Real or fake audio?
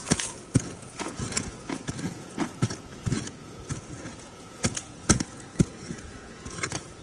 fake